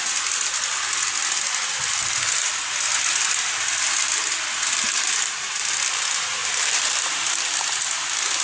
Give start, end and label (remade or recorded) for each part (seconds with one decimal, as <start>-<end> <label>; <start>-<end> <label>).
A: 0.0-6.4 recorded; 6.4-7.4 remade; 7.4-8.4 recorded